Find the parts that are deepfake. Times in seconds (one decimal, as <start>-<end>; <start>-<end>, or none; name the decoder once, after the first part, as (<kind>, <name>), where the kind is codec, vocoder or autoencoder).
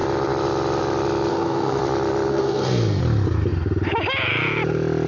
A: 1.3-1.8 (codec, SNAC); 2.3-3.0